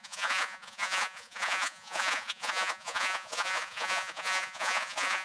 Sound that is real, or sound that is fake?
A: fake